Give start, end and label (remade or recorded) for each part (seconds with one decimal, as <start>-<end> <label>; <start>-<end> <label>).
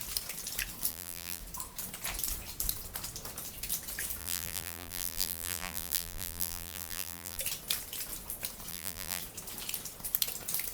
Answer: 0.0-0.9 recorded; 0.9-1.4 remade; 1.4-4.2 recorded; 4.2-7.4 remade; 7.4-8.7 recorded; 8.7-9.2 remade; 9.2-10.7 recorded